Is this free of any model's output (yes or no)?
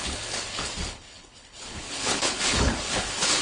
no